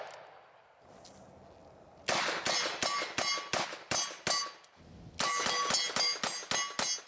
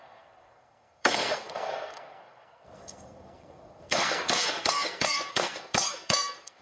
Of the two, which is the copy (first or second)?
second